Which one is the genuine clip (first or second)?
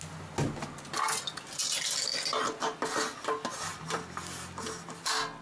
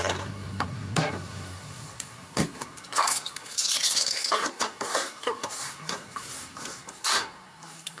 first